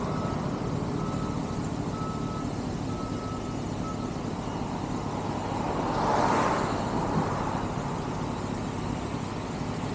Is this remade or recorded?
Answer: recorded